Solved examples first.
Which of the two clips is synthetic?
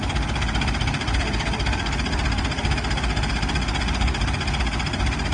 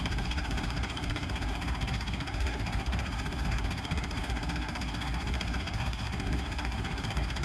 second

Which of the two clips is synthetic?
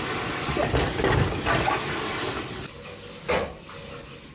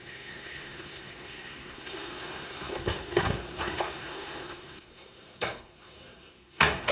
second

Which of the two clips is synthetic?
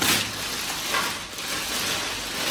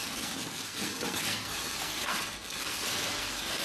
second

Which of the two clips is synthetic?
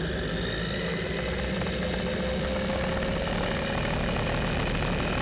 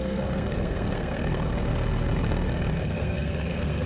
second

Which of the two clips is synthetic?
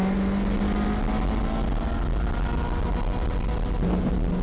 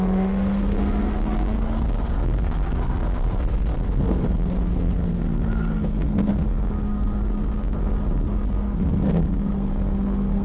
second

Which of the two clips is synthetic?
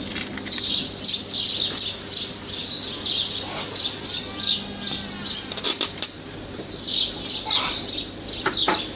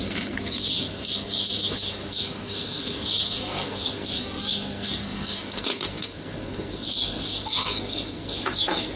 second